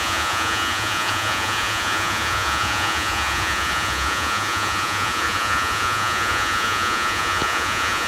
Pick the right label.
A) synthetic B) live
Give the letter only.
A